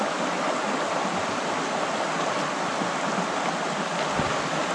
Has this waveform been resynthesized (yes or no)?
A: no